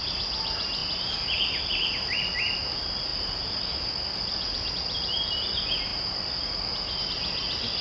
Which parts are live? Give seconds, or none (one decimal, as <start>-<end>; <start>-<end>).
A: 0.0-7.8